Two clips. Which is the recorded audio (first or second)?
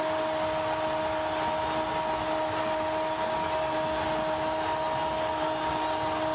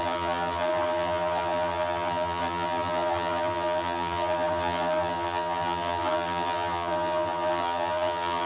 first